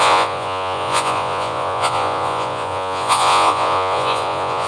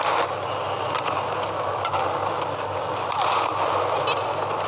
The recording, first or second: second